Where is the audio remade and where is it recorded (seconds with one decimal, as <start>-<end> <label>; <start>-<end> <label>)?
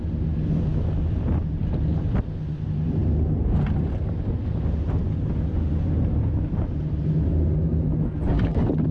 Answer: 0.0-5.5 recorded; 5.5-6.8 remade; 6.8-8.9 recorded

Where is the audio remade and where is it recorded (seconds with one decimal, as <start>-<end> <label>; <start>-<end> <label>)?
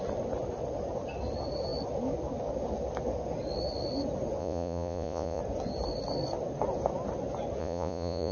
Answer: 0.0-4.4 recorded; 4.4-5.4 remade; 5.4-7.6 recorded; 7.6-8.3 remade